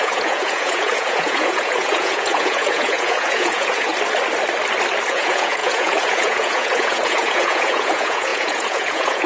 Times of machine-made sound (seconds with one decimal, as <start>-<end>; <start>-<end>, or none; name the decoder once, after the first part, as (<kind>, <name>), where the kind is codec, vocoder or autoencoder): 0.0-3.9 (vocoder, Vocos); 5.1-9.3